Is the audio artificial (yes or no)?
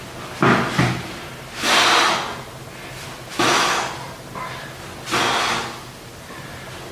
no